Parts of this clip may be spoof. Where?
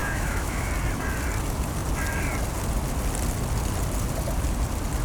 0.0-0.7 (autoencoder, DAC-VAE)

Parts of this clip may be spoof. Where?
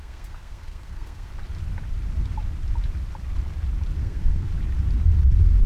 0.0-1.3 (codec, SNAC); 4.0-4.5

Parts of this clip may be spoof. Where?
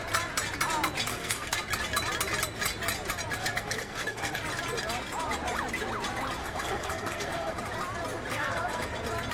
1.1-1.6 (codec, SNAC); 3.4-4.4; 6.4-7.6; 8.3-8.9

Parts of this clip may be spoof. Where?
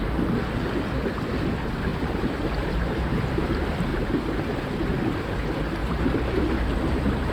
1.9-3.4 (vocoder, BigVGAN v2); 3.9-4.6